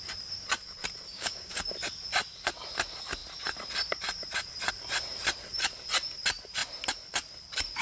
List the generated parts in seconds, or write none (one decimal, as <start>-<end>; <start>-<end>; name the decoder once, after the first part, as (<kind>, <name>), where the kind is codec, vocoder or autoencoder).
1.1-1.6 (codec, DAC)